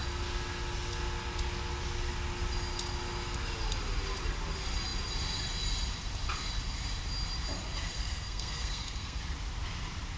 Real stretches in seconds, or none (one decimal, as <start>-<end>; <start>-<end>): 0.0-7.9; 9.2-10.2